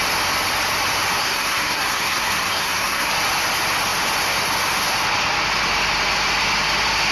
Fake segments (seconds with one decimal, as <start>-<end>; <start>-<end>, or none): 1.2-3.1